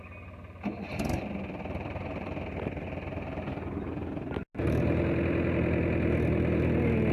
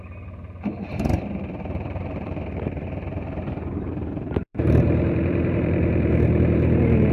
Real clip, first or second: first